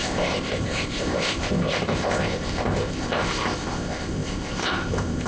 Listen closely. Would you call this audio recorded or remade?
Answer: remade